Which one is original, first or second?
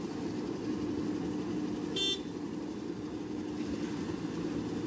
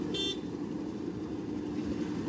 first